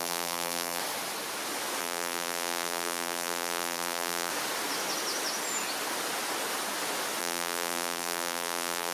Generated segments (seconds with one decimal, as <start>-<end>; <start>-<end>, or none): 0.0-0.8; 1.8-4.3; 7.2-8.9